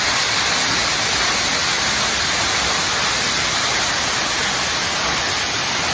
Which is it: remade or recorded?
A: recorded